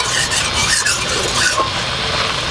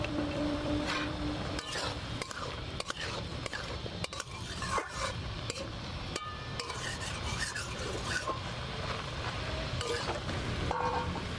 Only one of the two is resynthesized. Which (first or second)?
second